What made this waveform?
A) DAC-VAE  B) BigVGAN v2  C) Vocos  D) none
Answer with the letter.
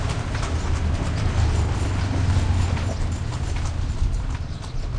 D